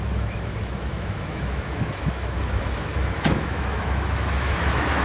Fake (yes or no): yes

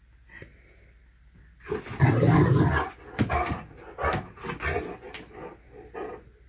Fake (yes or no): no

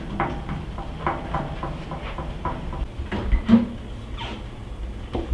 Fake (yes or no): no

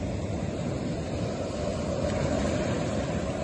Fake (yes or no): no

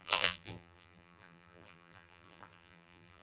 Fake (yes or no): yes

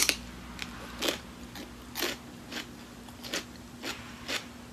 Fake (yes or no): no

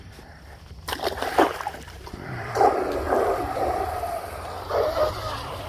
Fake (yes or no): yes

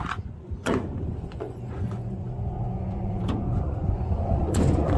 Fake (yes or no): yes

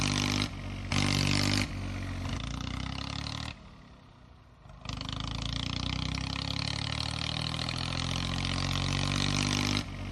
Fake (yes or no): no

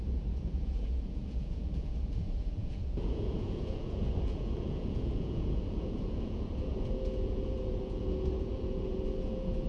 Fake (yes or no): yes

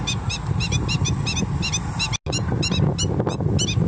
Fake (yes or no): no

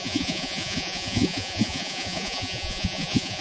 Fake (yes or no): yes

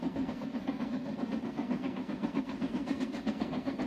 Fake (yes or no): yes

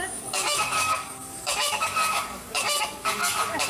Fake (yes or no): yes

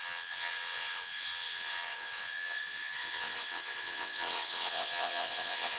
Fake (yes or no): yes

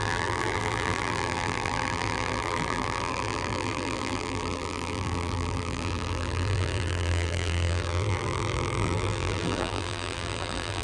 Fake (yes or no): yes